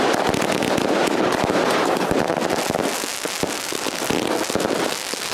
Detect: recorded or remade recorded